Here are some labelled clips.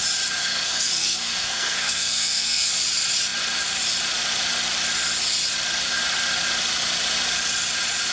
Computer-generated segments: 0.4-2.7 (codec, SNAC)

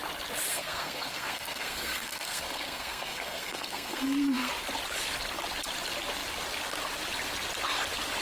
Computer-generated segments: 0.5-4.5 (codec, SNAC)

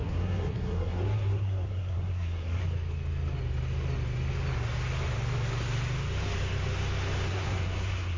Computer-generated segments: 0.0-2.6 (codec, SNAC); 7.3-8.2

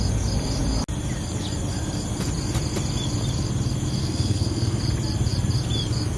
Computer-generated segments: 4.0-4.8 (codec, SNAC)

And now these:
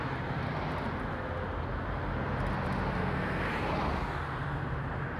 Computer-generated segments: 3.0-3.5 (codec, SNAC)

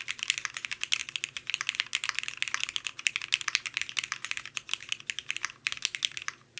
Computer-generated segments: none

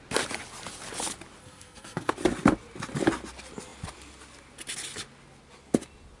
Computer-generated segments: 1.4-2.1 (codec, SNAC)